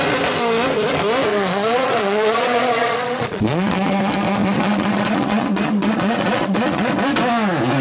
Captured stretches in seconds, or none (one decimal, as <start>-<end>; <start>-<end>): 0.0-1.3; 4.0-4.4; 6.9-7.8